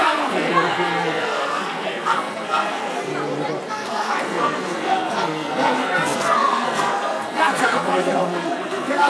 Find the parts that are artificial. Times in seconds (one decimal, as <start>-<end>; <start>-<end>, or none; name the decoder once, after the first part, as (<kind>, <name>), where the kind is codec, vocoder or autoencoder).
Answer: 0.0-3.1 (codec, SNAC); 3.7-9.1